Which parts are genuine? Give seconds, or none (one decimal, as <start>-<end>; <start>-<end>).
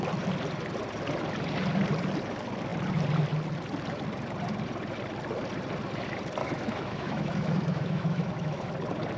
0.0-6.4; 8.7-9.2